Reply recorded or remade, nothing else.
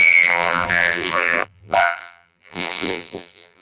remade